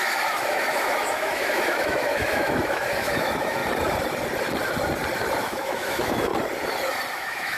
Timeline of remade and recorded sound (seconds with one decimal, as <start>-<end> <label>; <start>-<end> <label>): 0.0-3.6 remade; 3.6-5.4 recorded; 5.4-6.3 remade; 6.3-7.1 recorded; 7.1-7.6 remade